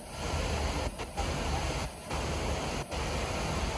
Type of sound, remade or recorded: recorded